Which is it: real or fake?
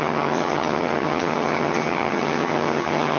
fake